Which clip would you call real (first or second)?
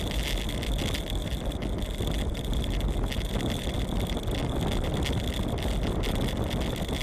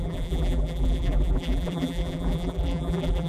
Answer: first